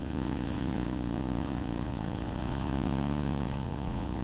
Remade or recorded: remade